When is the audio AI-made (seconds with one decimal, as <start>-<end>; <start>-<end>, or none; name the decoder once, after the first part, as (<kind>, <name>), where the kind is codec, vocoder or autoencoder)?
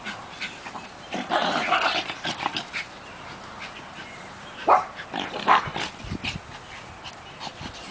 0.0-5.7 (vocoder, BigVGAN v2); 6.2-7.9